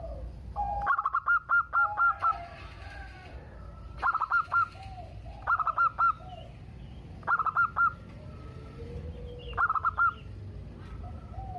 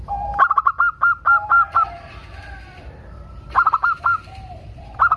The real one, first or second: first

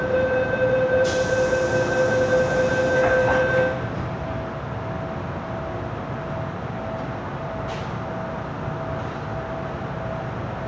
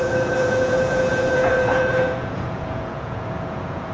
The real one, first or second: first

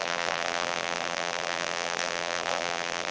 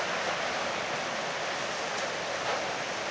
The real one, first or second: second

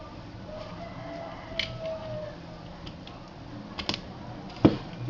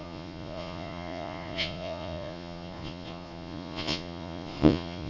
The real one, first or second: first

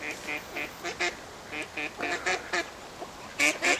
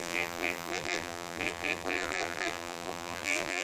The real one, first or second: first